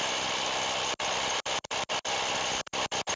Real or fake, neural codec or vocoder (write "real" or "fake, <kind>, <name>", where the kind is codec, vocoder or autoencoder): real